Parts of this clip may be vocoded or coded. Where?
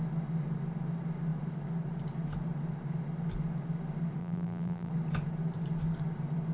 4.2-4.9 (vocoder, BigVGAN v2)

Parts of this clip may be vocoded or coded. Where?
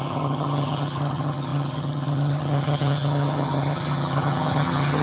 0.0-5.0 (vocoder, HiFi-GAN)